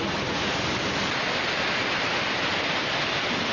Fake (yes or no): no